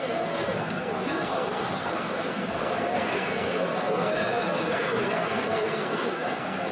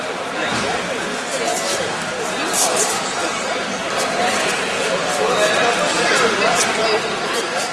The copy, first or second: first